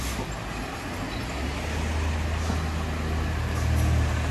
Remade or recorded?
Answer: recorded